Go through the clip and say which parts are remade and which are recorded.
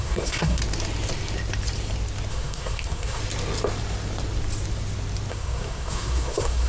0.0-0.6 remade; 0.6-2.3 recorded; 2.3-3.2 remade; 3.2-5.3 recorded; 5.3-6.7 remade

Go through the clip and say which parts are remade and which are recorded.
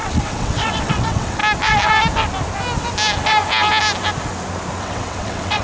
0.0-1.4 remade; 1.4-4.8 recorded; 4.8-5.6 remade